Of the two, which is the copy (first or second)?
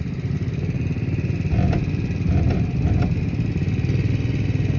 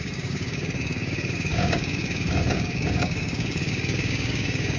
second